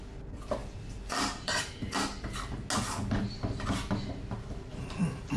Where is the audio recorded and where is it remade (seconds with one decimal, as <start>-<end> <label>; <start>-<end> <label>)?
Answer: 0.0-0.6 recorded; 0.6-1.8 remade; 1.8-4.7 recorded; 4.7-5.4 remade